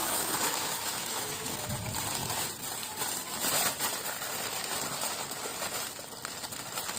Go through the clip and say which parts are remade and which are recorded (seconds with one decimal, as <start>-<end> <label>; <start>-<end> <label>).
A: 0.0-1.7 remade; 1.7-7.0 recorded